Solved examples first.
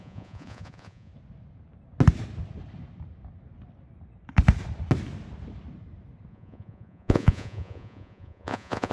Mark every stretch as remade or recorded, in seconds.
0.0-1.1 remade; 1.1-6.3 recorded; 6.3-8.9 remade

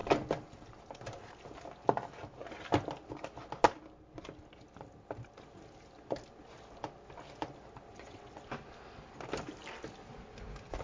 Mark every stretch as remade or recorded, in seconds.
0.0-7.9 recorded; 7.9-8.4 remade; 8.4-10.8 recorded